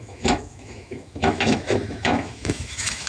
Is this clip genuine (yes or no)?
no